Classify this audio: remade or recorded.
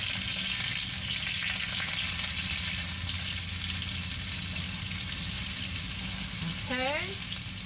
recorded